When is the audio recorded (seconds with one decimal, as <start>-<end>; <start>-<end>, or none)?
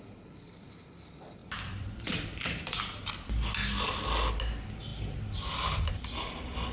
0.0-1.4; 2.8-6.7